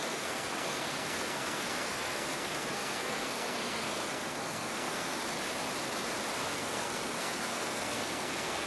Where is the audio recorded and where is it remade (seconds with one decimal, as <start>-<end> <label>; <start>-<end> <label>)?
0.0-5.2 remade; 5.2-6.4 recorded; 6.4-8.7 remade